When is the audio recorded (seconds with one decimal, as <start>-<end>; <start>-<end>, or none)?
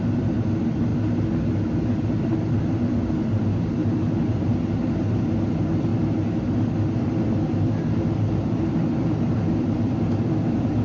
0.9-2.2; 3.8-4.3; 5.9-7.0